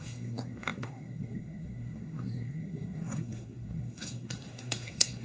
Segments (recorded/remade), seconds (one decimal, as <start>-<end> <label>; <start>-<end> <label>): 0.0-5.2 remade